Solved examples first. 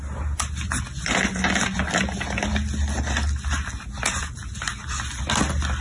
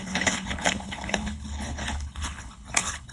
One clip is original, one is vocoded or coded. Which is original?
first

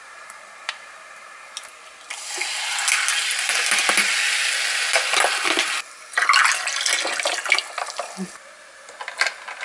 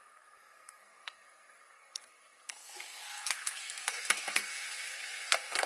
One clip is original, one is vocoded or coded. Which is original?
first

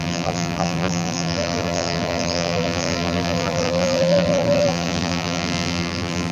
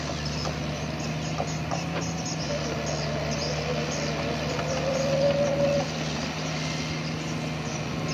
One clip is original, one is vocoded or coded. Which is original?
second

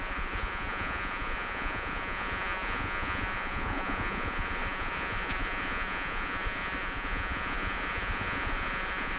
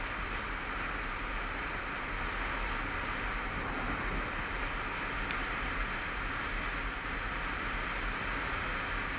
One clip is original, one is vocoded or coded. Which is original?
second